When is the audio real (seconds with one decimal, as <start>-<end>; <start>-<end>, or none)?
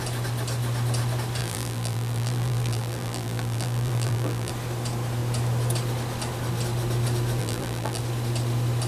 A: 0.0-1.4; 4.5-7.4; 8.0-8.9